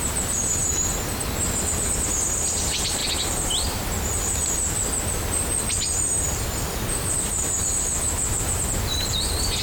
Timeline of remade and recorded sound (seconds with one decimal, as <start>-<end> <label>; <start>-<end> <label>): 0.0-0.6 remade; 0.6-1.4 recorded; 1.4-3.0 remade; 3.0-6.1 recorded; 6.1-9.6 remade